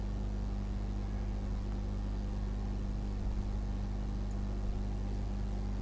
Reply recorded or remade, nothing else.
recorded